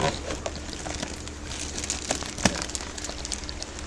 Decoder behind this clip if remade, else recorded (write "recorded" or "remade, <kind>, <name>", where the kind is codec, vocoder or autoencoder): recorded